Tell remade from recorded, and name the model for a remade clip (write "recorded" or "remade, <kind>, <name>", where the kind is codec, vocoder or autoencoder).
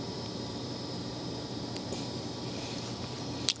remade, vocoder, BigVGAN v2